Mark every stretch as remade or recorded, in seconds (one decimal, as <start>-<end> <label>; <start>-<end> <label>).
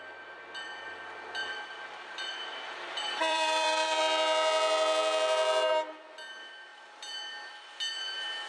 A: 0.0-1.4 recorded; 1.4-4.0 remade; 4.0-8.5 recorded